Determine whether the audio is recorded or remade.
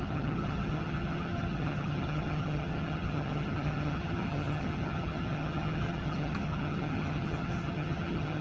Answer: remade